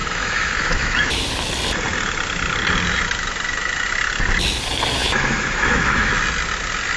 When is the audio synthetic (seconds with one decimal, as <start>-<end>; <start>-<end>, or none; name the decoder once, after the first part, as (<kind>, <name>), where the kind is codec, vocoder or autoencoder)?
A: 0.0-1.1 (autoencoder, DAC-VAE); 5.0-6.1